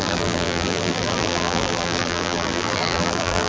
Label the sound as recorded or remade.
remade